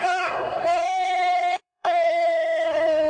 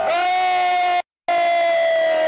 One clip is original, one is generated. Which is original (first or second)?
second